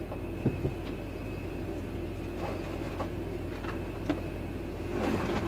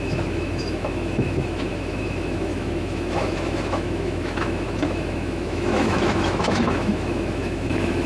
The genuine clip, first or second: first